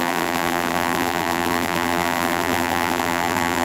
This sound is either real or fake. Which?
fake